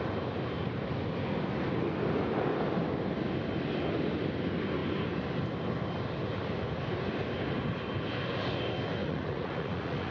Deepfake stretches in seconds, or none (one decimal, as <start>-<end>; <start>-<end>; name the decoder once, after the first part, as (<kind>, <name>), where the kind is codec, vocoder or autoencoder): 9.0-10.1 (vocoder, Vocos)